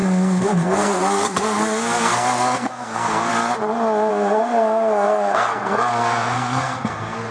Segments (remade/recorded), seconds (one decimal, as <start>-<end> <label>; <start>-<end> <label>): 0.0-3.3 remade; 3.3-4.1 recorded; 4.1-7.3 remade